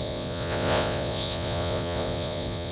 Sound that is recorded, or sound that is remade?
remade